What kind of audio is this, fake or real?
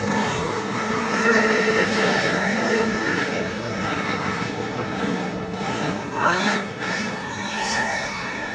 fake